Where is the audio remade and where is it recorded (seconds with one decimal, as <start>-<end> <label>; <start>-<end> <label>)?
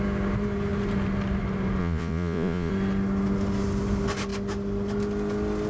0.0-1.8 recorded; 1.8-2.7 remade; 2.7-5.7 recorded